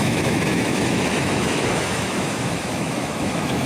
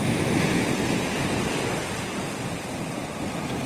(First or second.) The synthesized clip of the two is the first